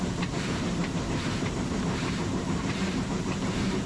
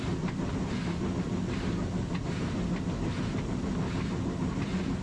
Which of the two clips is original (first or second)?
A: second